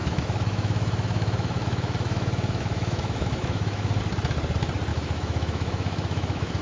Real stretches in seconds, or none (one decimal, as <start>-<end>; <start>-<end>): 4.0-4.9